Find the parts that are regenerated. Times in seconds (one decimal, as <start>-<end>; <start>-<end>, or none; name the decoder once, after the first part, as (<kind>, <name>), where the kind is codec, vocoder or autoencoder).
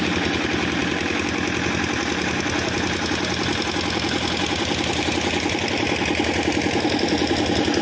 none